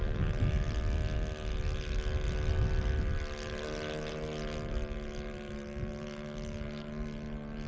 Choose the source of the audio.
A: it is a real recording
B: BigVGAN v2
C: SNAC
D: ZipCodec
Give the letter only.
A